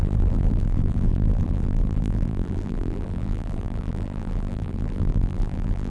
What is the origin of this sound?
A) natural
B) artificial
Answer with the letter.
B